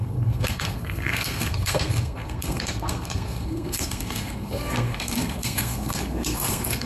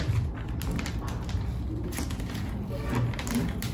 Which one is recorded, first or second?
second